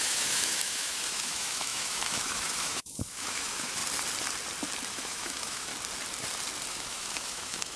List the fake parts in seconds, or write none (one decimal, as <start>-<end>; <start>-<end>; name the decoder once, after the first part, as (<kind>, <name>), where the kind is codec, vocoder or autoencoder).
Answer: 0.0-3.8 (autoencoder, DAC-VAE); 4.9-5.7; 6.7-7.8